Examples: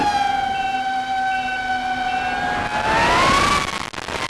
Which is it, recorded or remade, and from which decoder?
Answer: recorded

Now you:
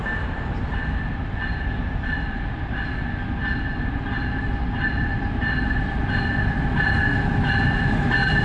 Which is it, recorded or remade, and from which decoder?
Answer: recorded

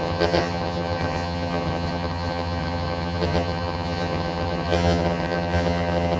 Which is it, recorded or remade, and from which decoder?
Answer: remade, vocoder, HiFi-GAN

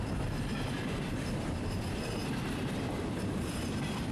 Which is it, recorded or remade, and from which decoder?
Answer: remade, vocoder, BigVGAN v2